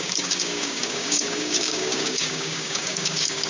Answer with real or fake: fake